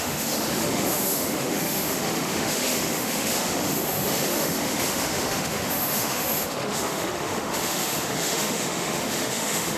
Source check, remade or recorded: remade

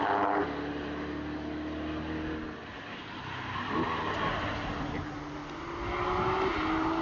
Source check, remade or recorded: recorded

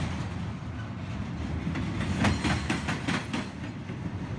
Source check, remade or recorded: recorded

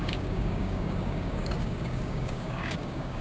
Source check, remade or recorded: remade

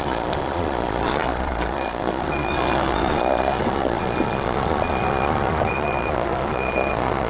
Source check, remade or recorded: remade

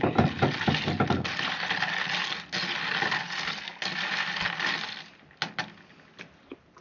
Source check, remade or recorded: recorded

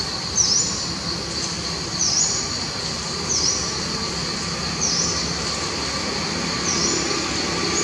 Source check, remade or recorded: recorded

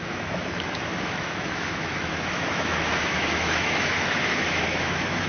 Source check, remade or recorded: remade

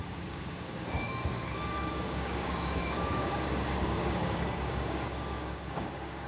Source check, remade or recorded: remade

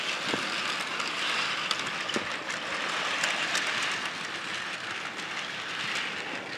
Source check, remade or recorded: recorded